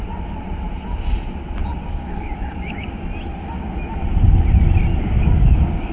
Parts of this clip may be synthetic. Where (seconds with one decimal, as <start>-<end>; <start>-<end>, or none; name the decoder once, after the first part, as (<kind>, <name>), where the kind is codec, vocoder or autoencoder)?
1.6-2.9 (codec, DAC); 4.9-5.9